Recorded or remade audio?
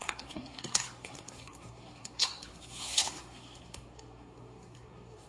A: remade